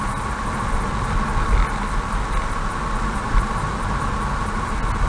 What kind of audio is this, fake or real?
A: real